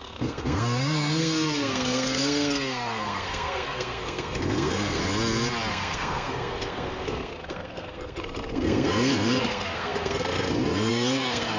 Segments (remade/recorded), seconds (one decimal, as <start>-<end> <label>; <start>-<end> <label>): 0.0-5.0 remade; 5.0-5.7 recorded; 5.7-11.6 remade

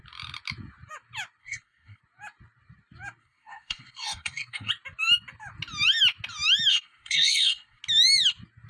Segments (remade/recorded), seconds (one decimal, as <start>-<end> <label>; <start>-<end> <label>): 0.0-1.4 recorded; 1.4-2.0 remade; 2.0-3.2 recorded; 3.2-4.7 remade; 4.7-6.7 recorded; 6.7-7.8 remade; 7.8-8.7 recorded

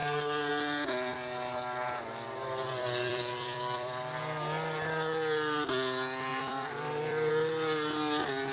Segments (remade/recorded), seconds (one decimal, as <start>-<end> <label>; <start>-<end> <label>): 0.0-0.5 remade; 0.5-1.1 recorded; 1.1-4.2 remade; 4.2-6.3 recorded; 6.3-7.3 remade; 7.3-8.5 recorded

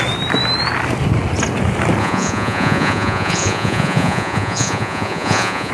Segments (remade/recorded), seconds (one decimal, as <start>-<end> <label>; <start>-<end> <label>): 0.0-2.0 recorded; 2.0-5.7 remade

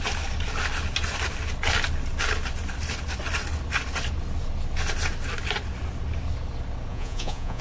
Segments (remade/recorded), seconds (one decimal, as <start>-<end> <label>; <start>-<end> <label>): 0.0-6.9 recorded; 6.9-7.6 remade